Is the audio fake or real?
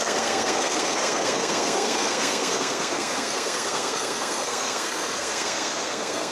fake